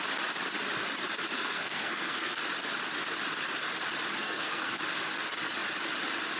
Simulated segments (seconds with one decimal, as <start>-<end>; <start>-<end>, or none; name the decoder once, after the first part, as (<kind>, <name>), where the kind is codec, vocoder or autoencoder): 1.3-2.4 (codec, SNAC); 4.2-4.8